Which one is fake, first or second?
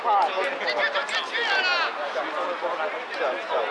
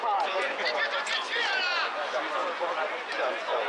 second